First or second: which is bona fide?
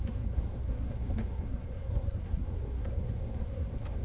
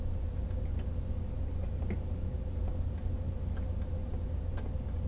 second